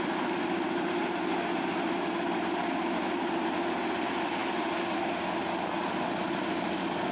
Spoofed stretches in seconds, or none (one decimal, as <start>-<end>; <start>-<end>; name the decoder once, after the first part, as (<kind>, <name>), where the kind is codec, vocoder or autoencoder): none